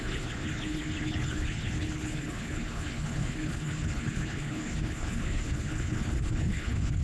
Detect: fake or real fake